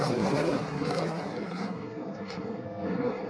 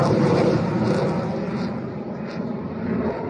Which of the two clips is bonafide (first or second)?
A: second